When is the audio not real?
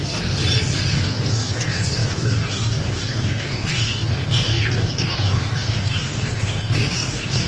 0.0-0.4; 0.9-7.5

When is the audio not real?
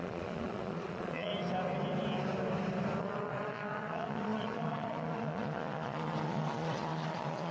0.0-1.3; 3.0-7.5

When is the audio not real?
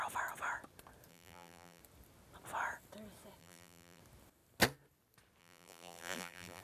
1.1-1.8; 3.4-4.0; 5.4-6.6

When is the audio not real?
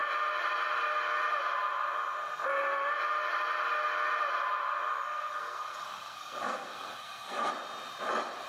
4.9-7.5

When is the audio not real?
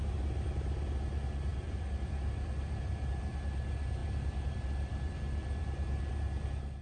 1.5-3.2; 4.0-6.2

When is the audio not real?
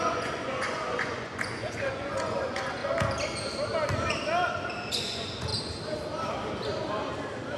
0.0-2.8; 4.9-5.5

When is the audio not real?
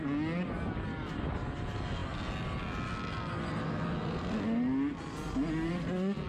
none